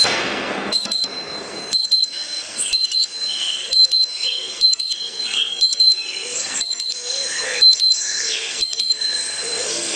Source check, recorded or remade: remade